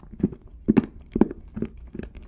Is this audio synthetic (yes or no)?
no